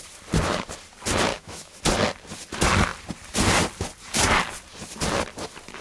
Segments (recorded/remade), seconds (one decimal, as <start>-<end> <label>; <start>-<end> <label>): 0.0-1.3 recorded; 1.3-1.8 remade; 1.8-5.8 recorded